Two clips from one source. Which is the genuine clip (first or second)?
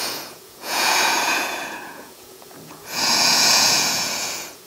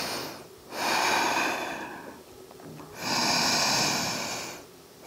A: second